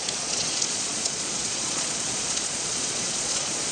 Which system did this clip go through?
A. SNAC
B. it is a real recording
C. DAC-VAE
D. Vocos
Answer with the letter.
D